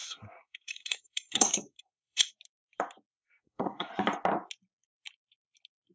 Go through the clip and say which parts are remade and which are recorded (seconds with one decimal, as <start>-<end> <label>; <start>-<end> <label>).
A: 0.0-2.3 remade; 2.3-3.1 recorded; 3.1-3.9 remade; 3.9-5.9 recorded